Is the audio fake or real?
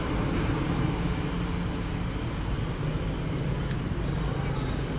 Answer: real